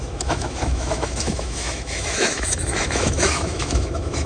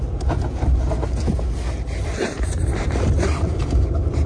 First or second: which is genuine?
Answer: second